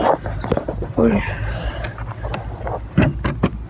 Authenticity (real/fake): real